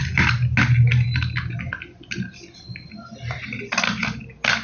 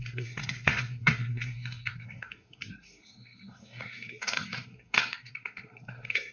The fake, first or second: second